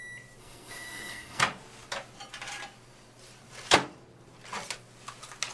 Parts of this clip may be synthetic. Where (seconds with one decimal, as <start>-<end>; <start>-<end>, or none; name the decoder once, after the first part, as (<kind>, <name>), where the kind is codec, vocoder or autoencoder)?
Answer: 0.4-1.4 (codec, SNAC)